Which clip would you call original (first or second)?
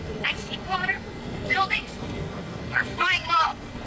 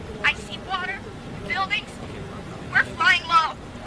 second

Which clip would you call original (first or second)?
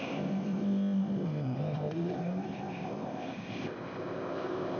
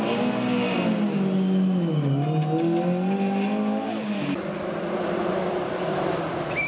second